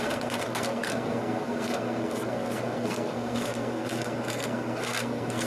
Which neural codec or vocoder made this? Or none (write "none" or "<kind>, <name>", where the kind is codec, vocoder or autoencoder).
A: codec, SNAC